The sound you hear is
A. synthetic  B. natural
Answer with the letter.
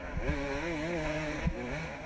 B